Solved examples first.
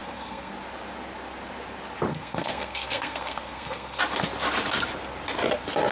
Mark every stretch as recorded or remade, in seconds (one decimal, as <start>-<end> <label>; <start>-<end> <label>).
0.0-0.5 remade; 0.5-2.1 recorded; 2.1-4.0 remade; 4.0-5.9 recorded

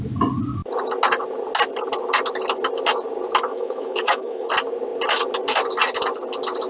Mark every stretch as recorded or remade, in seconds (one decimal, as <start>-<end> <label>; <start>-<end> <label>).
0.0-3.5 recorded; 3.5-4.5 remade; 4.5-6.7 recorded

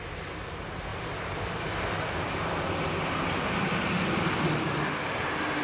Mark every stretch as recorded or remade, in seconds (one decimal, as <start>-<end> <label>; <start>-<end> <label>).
0.0-0.9 recorded; 0.9-4.2 remade; 4.2-5.6 recorded

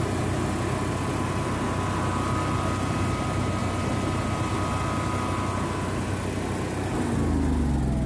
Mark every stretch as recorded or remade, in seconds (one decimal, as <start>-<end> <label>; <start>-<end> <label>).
0.0-8.1 recorded

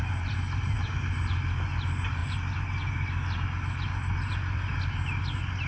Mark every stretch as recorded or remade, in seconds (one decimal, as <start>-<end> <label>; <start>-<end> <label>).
0.0-5.7 recorded

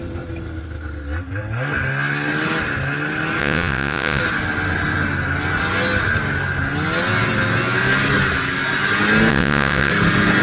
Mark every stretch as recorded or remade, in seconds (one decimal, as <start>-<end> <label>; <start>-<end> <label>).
0.0-3.4 recorded; 3.4-4.2 remade; 4.2-9.3 recorded; 9.3-9.9 remade; 9.9-10.4 recorded